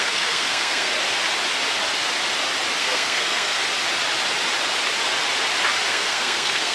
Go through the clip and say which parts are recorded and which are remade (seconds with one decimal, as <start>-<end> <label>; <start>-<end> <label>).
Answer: 0.0-0.9 remade; 0.9-2.8 recorded; 2.8-3.6 remade; 3.6-5.9 recorded; 5.9-6.7 remade